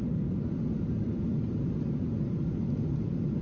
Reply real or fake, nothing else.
real